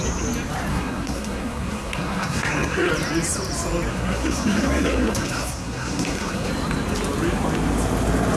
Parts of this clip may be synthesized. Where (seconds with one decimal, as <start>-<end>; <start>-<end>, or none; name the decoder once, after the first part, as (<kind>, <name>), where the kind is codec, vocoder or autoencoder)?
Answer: 0.7-2.9 (codec, SNAC); 3.9-6.5